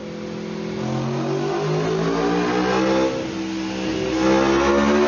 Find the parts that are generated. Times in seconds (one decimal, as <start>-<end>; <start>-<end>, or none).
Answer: none